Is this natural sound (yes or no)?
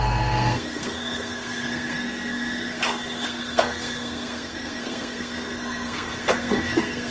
no